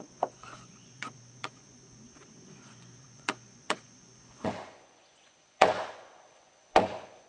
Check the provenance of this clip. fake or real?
fake